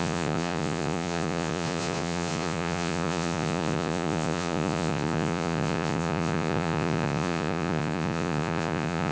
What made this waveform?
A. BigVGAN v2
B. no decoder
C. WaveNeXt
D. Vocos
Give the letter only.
D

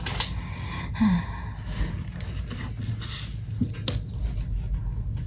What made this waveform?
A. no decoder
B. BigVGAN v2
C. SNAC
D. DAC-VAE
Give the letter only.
A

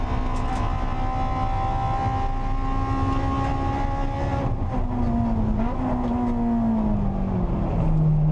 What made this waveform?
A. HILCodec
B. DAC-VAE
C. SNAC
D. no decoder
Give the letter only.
D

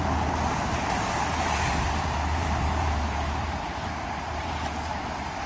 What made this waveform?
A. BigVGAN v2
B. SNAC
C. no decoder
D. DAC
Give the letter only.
A